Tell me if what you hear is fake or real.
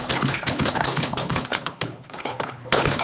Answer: fake